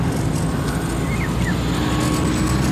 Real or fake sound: real